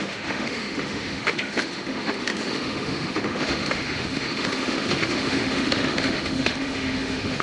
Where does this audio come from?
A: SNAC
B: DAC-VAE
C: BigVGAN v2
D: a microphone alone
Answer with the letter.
B